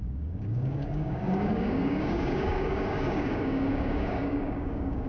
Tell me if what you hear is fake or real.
fake